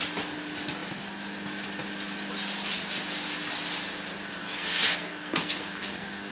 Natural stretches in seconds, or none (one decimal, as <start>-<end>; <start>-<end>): 0.0-4.4